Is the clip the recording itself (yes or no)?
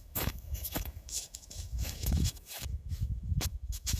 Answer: no